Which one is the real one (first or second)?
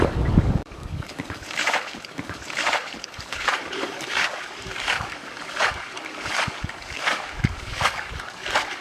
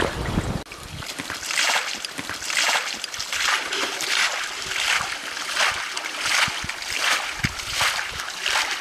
second